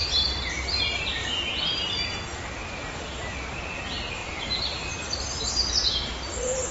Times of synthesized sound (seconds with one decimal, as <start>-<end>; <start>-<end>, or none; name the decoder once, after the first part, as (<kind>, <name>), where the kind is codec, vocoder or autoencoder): 0.0-0.5 (vocoder, BigVGAN v2); 1.2-1.9; 4.2-5.5